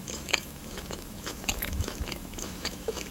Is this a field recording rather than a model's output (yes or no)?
no